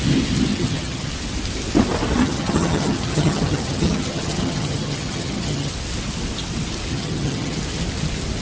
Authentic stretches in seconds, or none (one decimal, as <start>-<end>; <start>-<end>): 0.0-0.5; 1.1-2.2; 5.7-6.9; 7.6-8.4